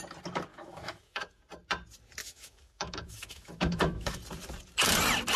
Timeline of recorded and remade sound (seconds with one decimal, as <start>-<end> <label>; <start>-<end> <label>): 0.0-0.5 recorded; 0.5-1.4 remade; 1.4-2.2 recorded; 2.2-4.2 remade; 4.2-5.4 recorded